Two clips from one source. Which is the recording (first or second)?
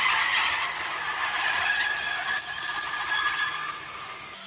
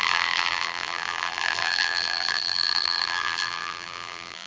first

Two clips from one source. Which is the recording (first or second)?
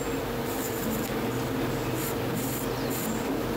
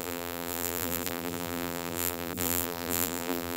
first